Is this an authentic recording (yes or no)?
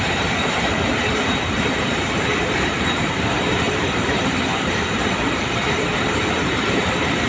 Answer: no